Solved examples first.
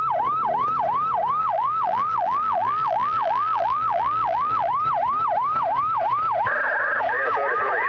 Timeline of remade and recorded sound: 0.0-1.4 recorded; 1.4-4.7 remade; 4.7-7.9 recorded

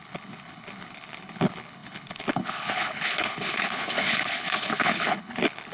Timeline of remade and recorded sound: 0.0-5.7 remade